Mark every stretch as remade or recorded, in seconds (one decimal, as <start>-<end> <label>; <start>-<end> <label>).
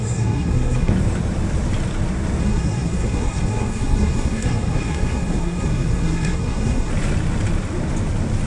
0.0-0.9 remade; 0.9-2.4 recorded; 2.4-6.9 remade; 6.9-8.5 recorded